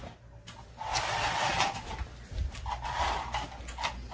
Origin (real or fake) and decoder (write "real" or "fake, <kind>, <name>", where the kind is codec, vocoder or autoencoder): real